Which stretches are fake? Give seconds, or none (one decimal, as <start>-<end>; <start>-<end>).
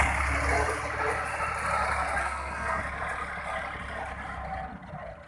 2.2-2.8